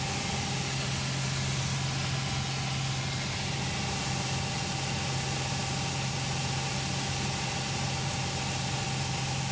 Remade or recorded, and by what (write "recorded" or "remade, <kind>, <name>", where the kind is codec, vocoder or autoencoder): recorded